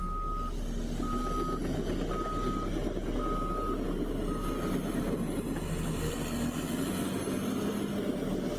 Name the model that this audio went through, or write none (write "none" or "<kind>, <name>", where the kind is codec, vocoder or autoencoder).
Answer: none